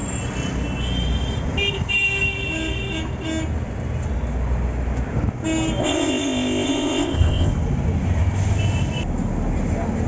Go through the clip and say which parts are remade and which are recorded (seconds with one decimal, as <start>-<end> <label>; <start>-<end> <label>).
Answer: 0.0-5.8 recorded; 5.8-7.5 remade; 7.5-10.1 recorded